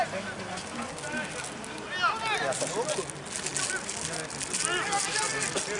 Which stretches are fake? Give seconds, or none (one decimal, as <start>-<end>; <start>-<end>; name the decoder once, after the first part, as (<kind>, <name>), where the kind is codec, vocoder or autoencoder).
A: none